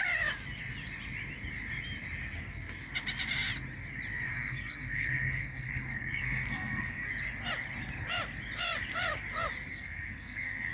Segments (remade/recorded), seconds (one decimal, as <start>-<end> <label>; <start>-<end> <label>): 0.0-4.3 recorded; 4.3-7.1 remade; 7.1-9.7 recorded; 9.7-10.7 remade